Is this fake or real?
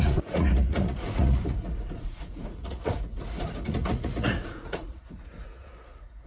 fake